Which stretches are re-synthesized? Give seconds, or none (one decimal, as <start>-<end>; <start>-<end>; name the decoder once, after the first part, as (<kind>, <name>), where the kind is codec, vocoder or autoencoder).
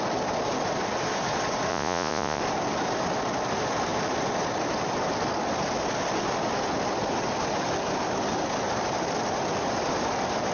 1.7-2.4 (vocoder, Vocos)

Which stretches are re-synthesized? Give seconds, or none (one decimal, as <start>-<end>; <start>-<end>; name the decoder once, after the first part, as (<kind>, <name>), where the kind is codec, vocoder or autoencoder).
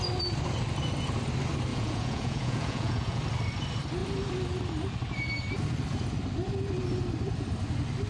1.7-3.2 (vocoder, Vocos)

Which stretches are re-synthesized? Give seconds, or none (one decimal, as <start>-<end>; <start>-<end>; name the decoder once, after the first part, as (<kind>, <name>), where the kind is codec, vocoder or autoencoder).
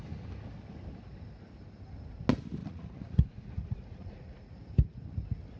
2.6-4.5 (vocoder, Vocos)